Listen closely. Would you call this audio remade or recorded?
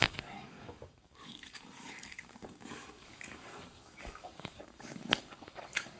remade